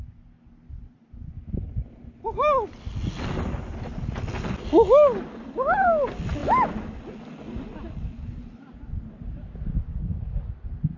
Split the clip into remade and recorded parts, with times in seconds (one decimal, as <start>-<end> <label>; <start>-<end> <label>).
0.0-11.0 recorded